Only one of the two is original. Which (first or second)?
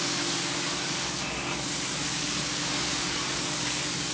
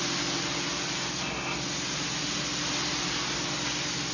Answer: second